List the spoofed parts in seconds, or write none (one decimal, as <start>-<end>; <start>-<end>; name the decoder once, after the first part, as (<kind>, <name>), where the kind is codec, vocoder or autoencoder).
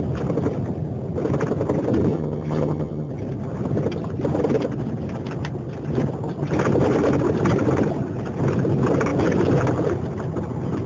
2.1-3.1 (vocoder, HiFi-GAN)